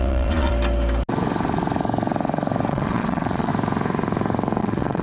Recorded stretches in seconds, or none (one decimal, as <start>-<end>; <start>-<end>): 0.5-2.7; 3.5-4.6